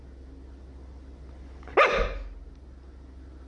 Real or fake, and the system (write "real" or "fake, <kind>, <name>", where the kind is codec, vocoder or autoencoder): real